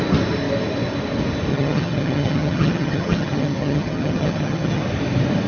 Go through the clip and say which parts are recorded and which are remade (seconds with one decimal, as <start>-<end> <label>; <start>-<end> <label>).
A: 0.0-1.5 recorded; 1.5-4.8 remade; 4.8-5.5 recorded